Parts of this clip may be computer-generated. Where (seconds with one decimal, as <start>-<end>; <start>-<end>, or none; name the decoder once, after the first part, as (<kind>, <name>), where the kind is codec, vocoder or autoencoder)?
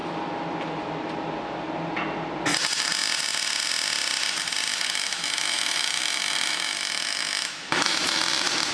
4.7-8.2 (autoencoder, DAC-VAE)